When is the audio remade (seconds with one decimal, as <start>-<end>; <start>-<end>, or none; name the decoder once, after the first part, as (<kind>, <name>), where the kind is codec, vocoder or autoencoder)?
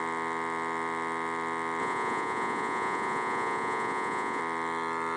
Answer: 1.8-4.4 (vocoder, Vocos)